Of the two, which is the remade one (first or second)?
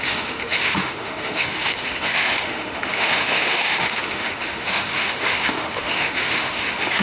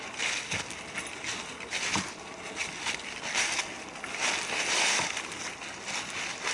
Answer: first